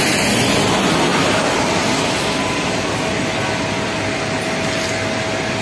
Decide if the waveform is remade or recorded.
recorded